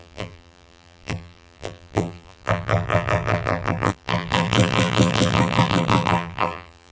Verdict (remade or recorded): remade